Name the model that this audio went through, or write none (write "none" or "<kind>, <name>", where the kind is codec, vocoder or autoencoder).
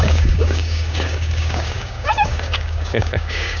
codec, DAC